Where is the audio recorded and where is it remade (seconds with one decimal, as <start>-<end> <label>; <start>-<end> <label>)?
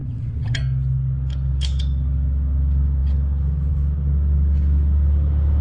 0.0-0.6 remade; 0.6-5.6 recorded